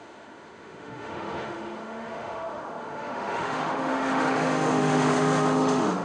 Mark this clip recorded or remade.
remade